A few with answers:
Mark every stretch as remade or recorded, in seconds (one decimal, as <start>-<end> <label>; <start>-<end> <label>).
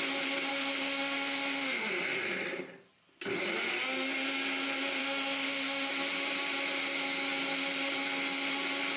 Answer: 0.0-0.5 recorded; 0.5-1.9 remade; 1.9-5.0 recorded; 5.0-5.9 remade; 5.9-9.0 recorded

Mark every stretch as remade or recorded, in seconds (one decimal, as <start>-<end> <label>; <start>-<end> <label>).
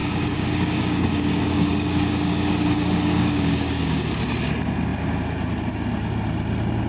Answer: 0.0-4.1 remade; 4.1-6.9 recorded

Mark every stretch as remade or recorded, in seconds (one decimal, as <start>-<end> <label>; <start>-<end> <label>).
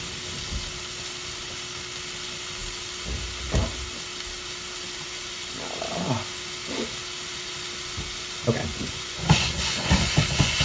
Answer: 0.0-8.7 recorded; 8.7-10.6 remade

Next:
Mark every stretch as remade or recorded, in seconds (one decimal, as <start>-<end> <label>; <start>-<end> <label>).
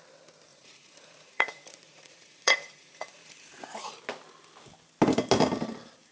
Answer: 0.0-0.5 recorded; 0.5-3.9 remade; 3.9-6.1 recorded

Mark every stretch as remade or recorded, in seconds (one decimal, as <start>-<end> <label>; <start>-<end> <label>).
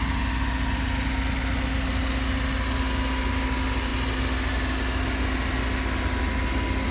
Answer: 0.0-6.9 recorded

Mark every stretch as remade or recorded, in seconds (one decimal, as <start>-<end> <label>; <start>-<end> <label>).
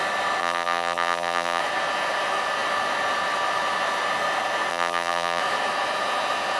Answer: 0.0-0.4 recorded; 0.4-1.6 remade; 1.6-4.7 recorded; 4.7-5.4 remade; 5.4-6.6 recorded